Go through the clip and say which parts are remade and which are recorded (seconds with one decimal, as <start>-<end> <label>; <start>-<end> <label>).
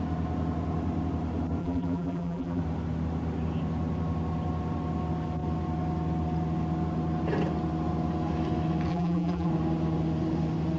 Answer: 0.0-1.6 recorded; 1.6-2.6 remade; 2.6-8.9 recorded; 8.9-9.5 remade; 9.5-10.8 recorded